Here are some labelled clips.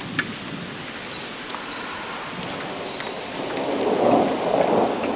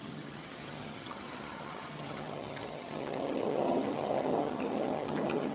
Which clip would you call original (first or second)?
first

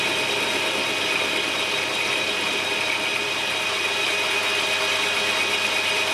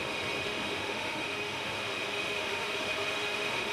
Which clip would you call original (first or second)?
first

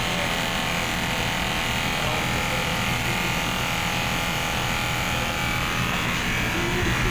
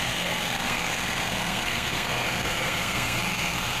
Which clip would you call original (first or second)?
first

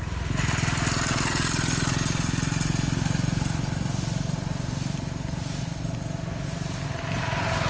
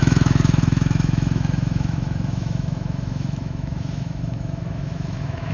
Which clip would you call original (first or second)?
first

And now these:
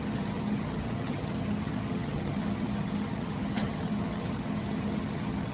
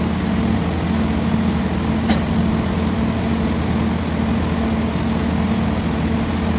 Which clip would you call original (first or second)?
second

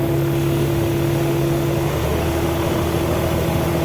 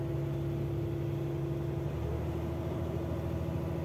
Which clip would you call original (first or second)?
second